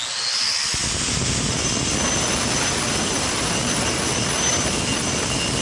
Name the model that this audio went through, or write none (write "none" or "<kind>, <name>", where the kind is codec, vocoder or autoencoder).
none